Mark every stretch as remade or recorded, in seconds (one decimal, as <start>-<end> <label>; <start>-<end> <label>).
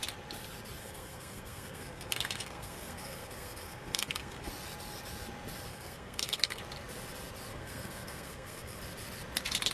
0.0-0.8 recorded; 0.8-4.5 remade; 4.5-5.7 recorded; 5.7-6.6 remade; 6.6-7.5 recorded; 7.5-8.8 remade; 8.8-9.7 recorded